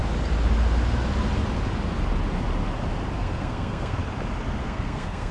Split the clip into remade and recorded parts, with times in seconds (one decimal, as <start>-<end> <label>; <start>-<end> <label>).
0.0-3.2 recorded; 3.2-4.0 remade; 4.0-4.6 recorded; 4.6-5.3 remade

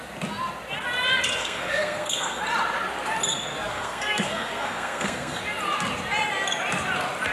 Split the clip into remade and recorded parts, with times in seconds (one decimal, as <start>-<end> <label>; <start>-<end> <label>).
0.0-1.4 recorded; 1.4-2.4 remade; 2.4-3.7 recorded; 3.7-5.4 remade; 5.4-7.3 recorded